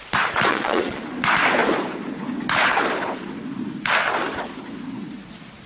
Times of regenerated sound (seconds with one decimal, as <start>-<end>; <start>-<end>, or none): 0.5-1.0